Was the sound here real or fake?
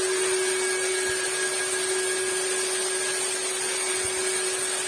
real